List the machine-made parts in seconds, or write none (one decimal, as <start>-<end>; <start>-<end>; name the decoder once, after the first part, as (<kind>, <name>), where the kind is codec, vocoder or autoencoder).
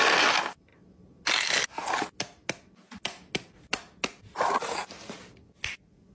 none